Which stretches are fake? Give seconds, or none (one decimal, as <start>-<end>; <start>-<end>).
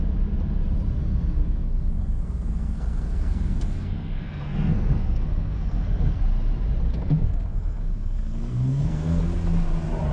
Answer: 1.0-6.2; 6.9-9.2